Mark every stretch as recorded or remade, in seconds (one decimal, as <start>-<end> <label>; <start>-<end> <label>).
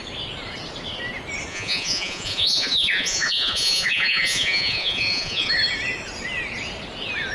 0.0-1.5 recorded; 1.5-5.5 remade; 5.5-7.3 recorded